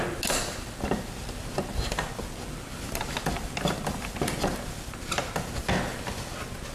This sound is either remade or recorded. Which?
recorded